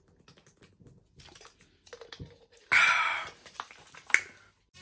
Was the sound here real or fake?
real